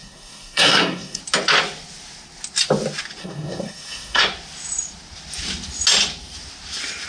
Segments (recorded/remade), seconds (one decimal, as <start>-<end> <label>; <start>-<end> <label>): 0.0-1.2 remade; 1.2-3.2 recorded; 3.2-4.2 remade; 4.2-7.1 recorded